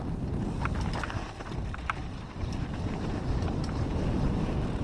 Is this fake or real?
fake